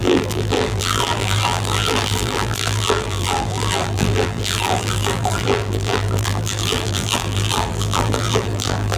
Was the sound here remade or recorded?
remade